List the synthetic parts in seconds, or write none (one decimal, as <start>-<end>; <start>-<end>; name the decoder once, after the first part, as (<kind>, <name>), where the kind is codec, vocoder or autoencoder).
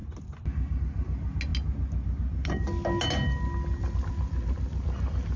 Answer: none